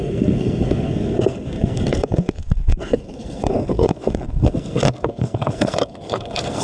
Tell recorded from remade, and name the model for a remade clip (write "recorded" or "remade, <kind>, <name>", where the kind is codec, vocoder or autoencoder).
remade, codec, SNAC